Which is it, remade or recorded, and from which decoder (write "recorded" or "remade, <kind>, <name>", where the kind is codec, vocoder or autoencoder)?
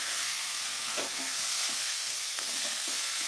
remade, codec, SNAC